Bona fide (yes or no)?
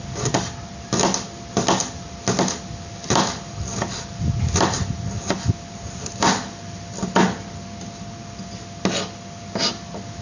yes